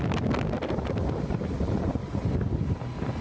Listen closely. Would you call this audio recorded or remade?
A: recorded